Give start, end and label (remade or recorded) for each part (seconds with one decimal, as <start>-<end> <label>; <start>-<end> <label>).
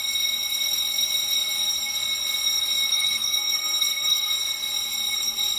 0.0-2.9 recorded; 2.9-4.3 remade; 4.3-5.6 recorded